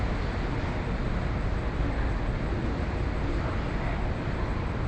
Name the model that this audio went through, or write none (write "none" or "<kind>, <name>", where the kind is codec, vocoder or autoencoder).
none